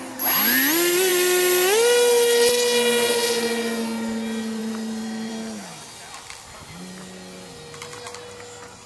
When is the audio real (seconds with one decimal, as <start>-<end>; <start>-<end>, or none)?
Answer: 0.0-4.6; 5.3-8.9